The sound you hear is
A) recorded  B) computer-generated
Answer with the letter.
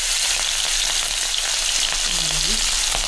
A